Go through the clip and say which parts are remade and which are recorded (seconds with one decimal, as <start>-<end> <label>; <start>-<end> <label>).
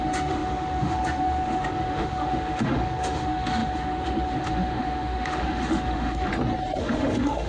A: 0.0-6.3 remade; 6.3-6.8 recorded; 6.8-7.5 remade